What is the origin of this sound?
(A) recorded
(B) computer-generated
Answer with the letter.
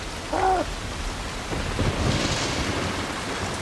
A